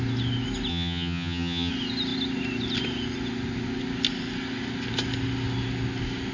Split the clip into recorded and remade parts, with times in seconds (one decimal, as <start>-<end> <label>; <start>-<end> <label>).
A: 0.0-0.7 recorded; 0.7-1.7 remade; 1.7-6.3 recorded